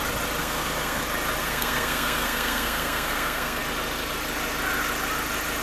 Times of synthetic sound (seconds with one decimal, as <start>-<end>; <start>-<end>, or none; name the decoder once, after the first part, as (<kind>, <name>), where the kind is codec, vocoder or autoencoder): 0.4-1.0 (codec, SNAC); 1.4-3.6